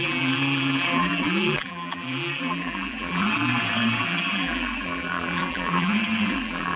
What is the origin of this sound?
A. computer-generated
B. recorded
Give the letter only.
A